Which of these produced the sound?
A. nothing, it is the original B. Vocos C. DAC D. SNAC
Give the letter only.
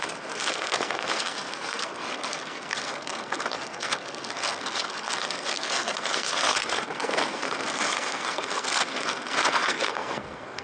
D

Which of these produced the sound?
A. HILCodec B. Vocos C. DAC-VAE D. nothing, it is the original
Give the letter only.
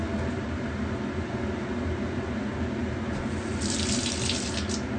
D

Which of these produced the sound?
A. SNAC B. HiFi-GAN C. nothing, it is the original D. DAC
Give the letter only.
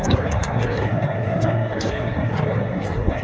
A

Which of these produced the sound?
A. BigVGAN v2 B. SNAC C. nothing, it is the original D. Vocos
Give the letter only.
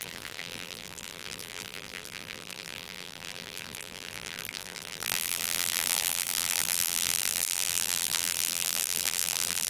A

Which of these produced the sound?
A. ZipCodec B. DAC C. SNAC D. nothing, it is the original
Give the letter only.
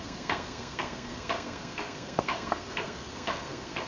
C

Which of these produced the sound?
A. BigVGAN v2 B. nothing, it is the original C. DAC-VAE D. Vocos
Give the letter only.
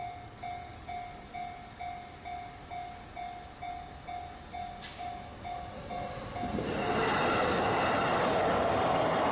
B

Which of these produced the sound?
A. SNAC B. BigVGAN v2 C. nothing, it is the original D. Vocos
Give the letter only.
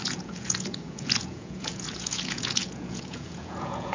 D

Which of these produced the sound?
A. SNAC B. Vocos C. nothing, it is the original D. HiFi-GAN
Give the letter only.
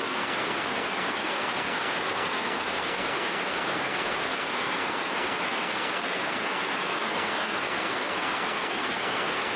A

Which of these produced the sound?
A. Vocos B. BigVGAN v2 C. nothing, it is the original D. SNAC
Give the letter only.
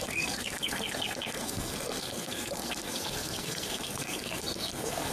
D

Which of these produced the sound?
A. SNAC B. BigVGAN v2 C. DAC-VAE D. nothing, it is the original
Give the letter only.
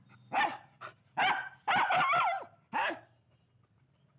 D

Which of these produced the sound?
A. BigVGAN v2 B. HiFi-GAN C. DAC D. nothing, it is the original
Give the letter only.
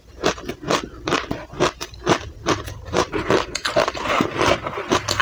D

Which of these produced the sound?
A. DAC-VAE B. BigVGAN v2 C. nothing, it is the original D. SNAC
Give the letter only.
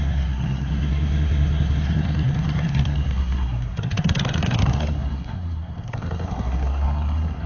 D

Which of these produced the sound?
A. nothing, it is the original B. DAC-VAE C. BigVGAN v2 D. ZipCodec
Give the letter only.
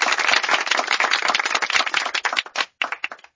A